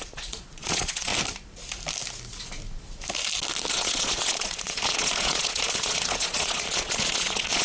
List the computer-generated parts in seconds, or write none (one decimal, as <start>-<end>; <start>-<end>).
0.0-1.1; 3.7-7.6